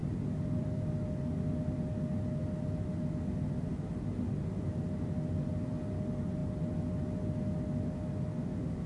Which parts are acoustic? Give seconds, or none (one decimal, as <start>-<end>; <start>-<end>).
1.1-8.9